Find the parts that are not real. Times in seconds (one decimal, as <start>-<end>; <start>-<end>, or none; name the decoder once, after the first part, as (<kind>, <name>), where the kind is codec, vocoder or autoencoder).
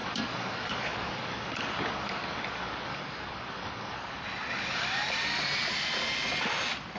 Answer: 0.0-4.2 (codec, DAC)